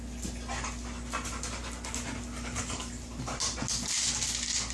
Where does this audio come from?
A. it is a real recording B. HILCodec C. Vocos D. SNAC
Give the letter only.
A